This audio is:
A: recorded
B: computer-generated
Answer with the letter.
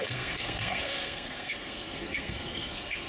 B